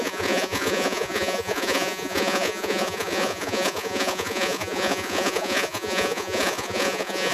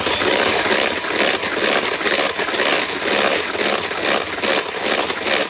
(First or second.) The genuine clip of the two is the second